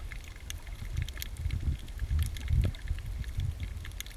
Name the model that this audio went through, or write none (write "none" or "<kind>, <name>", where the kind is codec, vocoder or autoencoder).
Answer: none